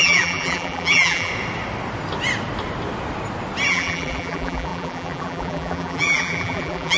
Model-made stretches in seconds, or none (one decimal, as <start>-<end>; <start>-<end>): 0.0-1.3; 3.7-7.0